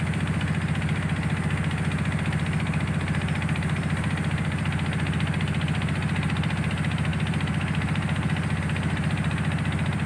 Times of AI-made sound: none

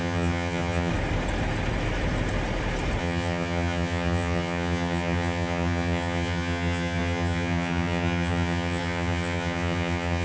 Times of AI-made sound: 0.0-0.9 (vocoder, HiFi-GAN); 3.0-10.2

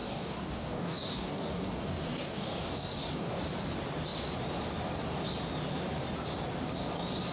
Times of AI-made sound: 0.0-3.4 (codec, DAC)

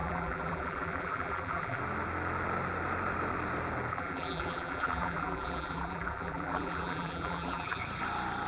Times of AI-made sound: 0.0-1.8 (vocoder, BigVGAN v2); 3.9-7.8

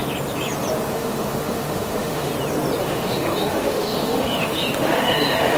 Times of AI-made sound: 0.9-2.3 (autoencoder, DAC-VAE); 2.8-5.6

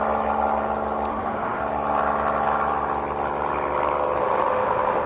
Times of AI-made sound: 1.1-1.6 (autoencoder, DAC-VAE); 4.2-5.1

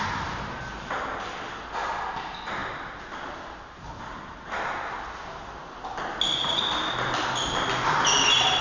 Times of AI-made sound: none

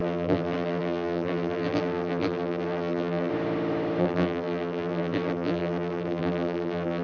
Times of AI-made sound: 0.0-3.3 (vocoder, BigVGAN v2); 4.0-7.0